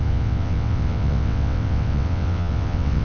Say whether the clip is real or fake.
fake